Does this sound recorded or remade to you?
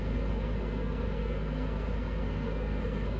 remade